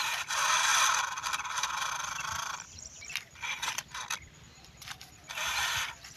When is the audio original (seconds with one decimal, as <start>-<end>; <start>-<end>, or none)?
none